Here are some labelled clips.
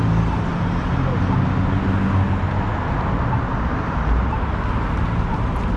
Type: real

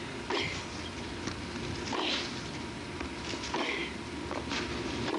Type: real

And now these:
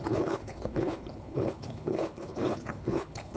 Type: fake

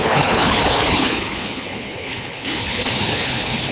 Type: fake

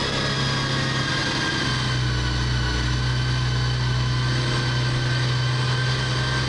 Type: real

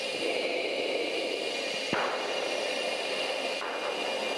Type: real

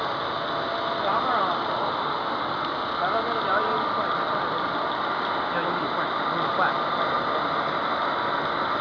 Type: real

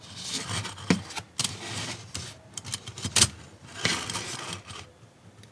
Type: real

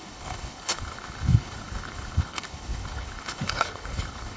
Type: fake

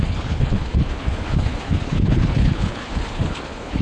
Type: fake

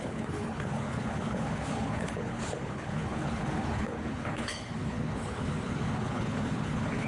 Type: fake